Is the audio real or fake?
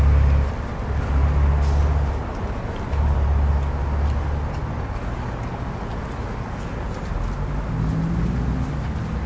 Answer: real